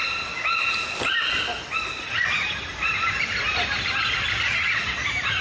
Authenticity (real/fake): real